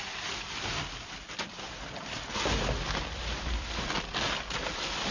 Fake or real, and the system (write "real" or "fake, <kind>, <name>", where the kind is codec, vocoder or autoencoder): real